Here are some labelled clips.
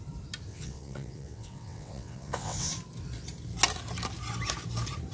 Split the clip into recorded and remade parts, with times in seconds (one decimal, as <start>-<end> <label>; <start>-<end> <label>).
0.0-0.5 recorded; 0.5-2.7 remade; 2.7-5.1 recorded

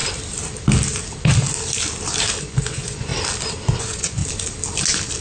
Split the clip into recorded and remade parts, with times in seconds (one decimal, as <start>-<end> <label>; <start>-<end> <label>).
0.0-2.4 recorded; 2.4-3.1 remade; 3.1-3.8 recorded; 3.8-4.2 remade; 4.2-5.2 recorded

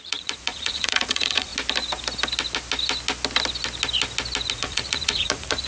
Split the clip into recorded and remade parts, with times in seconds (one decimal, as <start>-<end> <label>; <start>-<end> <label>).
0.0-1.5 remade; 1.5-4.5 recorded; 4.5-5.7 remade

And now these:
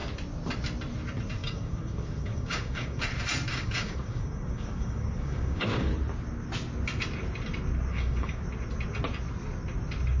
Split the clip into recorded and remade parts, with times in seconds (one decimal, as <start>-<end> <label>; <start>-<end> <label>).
0.0-1.4 recorded; 1.4-3.0 remade; 3.0-3.5 recorded; 3.5-5.9 remade; 5.9-7.9 recorded; 7.9-8.4 remade; 8.4-10.2 recorded

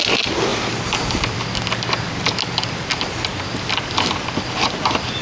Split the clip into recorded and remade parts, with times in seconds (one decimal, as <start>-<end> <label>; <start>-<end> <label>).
0.0-5.2 recorded

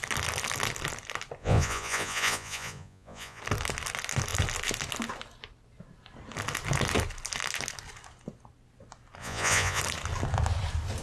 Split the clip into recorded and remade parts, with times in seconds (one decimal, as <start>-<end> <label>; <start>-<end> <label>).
0.0-1.4 recorded; 1.4-3.4 remade; 3.4-9.2 recorded; 9.2-9.8 remade; 9.8-11.0 recorded

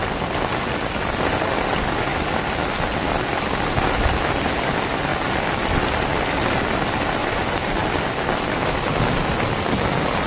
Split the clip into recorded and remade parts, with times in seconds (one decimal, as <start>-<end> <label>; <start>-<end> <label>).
0.0-7.8 recorded; 7.8-9.5 remade; 9.5-10.3 recorded

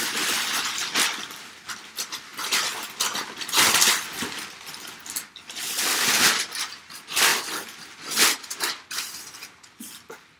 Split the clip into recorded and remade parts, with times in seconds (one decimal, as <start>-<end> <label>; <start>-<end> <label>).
0.0-10.4 recorded